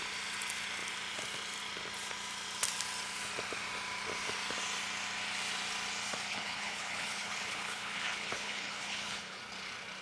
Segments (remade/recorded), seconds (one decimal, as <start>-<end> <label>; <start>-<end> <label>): 0.0-6.3 recorded; 6.3-9.4 remade; 9.4-10.0 recorded